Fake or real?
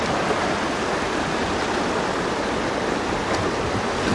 real